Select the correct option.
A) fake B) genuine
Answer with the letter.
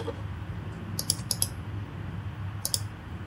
B